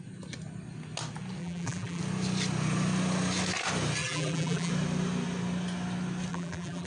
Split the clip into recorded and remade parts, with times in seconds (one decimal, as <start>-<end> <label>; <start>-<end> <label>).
0.0-1.4 recorded; 1.4-2.0 remade; 2.0-4.0 recorded; 4.0-4.7 remade; 4.7-6.3 recorded; 6.3-6.9 remade